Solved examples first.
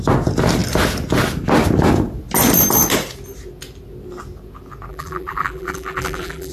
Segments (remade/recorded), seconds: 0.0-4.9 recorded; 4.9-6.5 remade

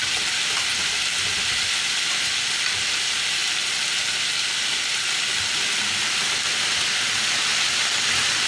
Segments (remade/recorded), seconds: 0.0-8.5 recorded

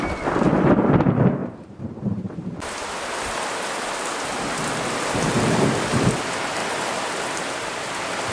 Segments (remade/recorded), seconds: 0.0-1.4 recorded; 1.4-2.3 remade; 2.3-8.3 recorded